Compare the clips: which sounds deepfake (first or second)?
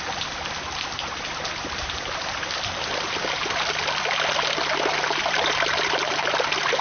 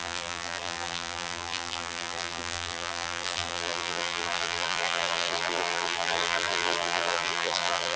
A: second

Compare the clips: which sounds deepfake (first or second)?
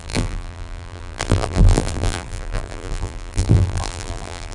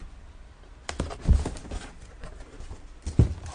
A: first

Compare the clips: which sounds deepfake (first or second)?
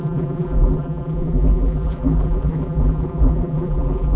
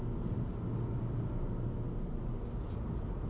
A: first